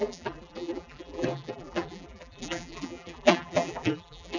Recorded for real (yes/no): no